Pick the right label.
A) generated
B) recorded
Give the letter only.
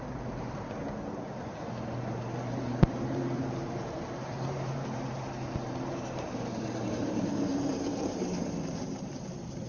A